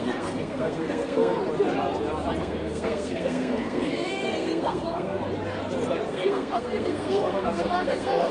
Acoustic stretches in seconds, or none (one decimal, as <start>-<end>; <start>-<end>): 1.4-2.4; 5.2-6.1

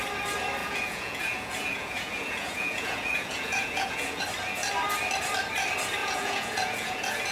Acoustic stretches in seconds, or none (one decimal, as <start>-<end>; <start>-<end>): 0.0-0.6; 4.2-6.0

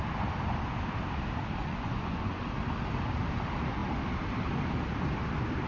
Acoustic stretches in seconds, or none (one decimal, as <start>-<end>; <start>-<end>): 0.0-1.6; 2.4-5.7